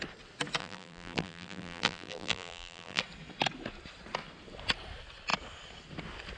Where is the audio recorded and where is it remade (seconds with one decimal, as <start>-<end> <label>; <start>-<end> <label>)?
0.0-0.6 recorded; 0.6-3.0 remade; 3.0-6.4 recorded